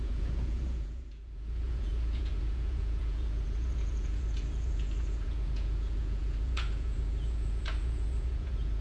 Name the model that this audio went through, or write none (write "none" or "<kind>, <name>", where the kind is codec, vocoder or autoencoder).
vocoder, Vocos